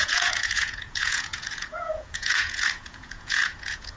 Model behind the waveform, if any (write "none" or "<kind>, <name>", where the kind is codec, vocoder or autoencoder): vocoder, Vocos